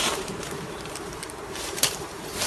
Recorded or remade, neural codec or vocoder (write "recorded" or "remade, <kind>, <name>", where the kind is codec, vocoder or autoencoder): remade, vocoder, BigVGAN v2